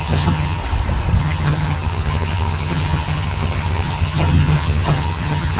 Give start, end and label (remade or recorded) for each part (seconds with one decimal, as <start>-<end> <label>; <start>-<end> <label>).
0.0-0.6 remade; 0.6-1.2 recorded; 1.2-5.6 remade